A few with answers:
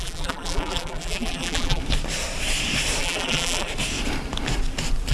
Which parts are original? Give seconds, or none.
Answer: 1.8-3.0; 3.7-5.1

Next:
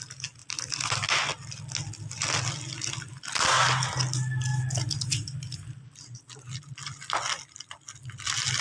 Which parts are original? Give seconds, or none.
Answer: 0.0-8.6

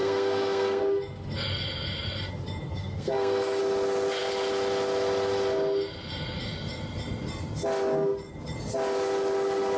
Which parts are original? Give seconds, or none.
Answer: 0.8-2.7; 3.6-9.8